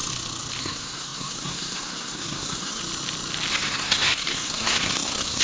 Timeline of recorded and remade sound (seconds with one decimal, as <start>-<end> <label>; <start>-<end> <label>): 0.0-0.6 recorded; 0.6-2.8 remade; 2.8-3.5 recorded; 3.5-5.4 remade